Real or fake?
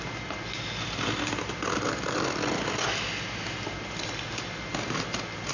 real